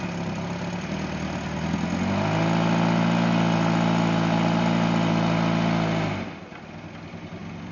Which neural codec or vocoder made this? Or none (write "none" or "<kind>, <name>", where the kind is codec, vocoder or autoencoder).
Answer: none